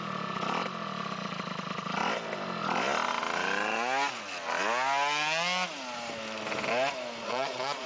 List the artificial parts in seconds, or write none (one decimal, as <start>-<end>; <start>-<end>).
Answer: 7.2-7.9

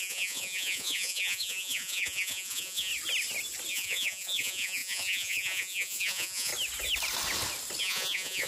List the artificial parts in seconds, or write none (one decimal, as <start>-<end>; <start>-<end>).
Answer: 0.0-2.9; 3.7-6.5; 7.8-8.5

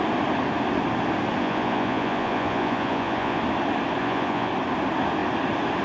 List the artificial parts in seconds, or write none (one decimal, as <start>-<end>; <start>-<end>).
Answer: 1.4-3.4; 4.0-4.5

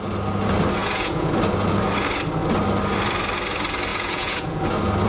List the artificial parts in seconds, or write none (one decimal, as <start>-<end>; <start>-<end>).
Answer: 0.8-1.3; 3.9-4.6

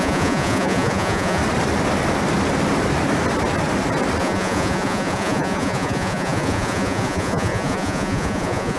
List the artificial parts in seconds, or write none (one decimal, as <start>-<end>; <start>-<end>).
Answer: 0.0-1.4; 4.2-8.8